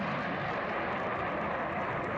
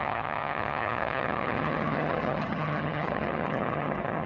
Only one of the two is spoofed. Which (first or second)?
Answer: second